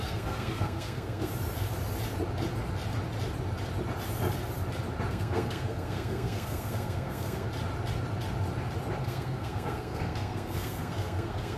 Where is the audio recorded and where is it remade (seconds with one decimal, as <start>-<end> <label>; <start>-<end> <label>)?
0.0-1.3 remade; 1.3-5.1 recorded; 5.1-7.5 remade; 7.5-9.0 recorded; 9.0-11.6 remade